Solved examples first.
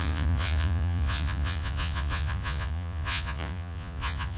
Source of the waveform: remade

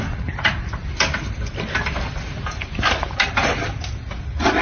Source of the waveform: recorded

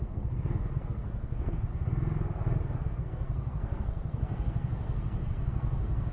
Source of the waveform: remade